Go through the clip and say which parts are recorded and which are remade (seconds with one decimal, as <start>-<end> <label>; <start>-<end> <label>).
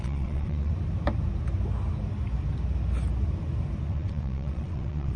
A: 0.0-0.7 remade; 0.7-3.8 recorded; 3.8-5.2 remade